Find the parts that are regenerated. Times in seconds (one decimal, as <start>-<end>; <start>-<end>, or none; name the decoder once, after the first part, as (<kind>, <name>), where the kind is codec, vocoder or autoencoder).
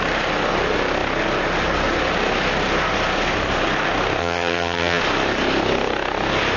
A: 4.2-5.0 (vocoder, HiFi-GAN)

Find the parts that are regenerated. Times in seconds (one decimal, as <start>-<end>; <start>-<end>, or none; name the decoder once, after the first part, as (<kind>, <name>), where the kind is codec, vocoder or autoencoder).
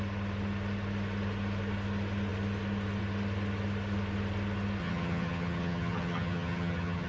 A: 4.8-7.1 (vocoder, HiFi-GAN)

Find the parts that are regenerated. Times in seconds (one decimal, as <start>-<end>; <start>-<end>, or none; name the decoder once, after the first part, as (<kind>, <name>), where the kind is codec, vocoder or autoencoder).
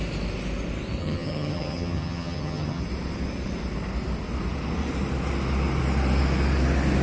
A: 1.0-2.8 (vocoder, HiFi-GAN)